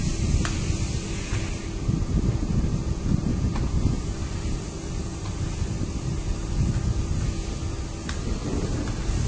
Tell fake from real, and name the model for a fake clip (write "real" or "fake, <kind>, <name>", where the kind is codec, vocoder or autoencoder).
real